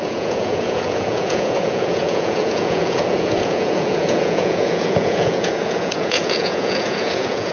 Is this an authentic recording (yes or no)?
no